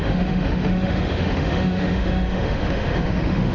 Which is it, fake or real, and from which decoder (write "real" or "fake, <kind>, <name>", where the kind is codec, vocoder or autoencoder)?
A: fake, autoencoder, DAC-VAE